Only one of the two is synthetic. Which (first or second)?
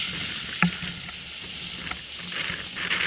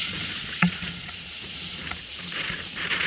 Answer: second